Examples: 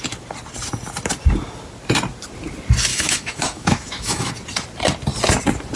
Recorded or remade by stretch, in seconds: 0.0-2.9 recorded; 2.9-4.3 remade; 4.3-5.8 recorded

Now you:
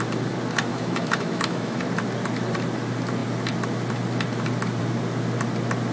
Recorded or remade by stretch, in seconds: 0.0-0.7 recorded; 0.7-1.8 remade; 1.8-5.9 recorded